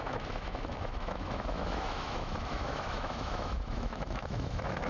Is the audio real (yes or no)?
no